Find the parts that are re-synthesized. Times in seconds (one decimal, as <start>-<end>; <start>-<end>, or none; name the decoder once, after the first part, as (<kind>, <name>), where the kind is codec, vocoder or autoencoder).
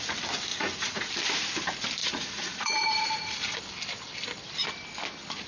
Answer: 0.5-1.1 (vocoder, Vocos); 2.0-3.6